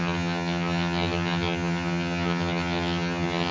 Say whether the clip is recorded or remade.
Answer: remade